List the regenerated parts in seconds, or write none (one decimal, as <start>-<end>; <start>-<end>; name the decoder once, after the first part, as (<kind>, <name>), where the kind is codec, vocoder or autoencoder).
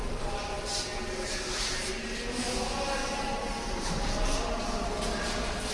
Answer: 3.0-4.9 (vocoder, BigVGAN v2)